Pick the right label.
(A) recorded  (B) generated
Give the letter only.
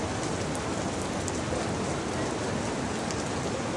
A